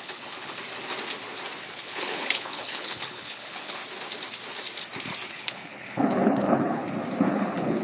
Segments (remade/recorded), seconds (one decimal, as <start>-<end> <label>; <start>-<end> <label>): 0.0-0.6 remade; 0.6-1.7 recorded; 1.7-3.8 remade; 3.8-5.3 recorded; 5.3-6.8 remade; 6.8-7.3 recorded; 7.3-7.8 remade